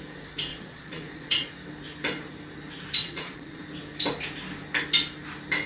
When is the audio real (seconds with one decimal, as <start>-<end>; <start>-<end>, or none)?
0.0-0.5; 1.5-3.0; 3.6-5.7